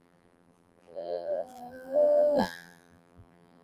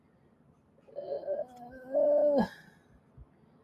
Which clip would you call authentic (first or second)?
second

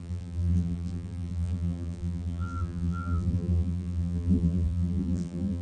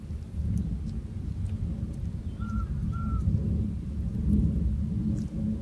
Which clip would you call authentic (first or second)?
second